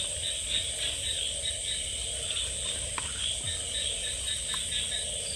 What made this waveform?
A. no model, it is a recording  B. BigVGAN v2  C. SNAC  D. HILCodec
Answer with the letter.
A